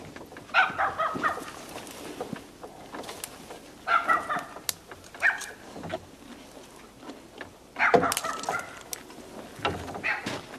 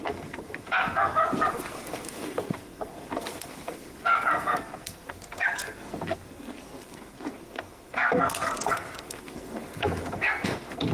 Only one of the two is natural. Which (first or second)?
first